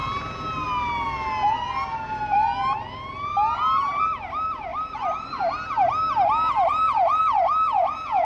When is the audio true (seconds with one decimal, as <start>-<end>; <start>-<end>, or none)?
0.0-4.7; 5.4-6.7; 7.2-8.2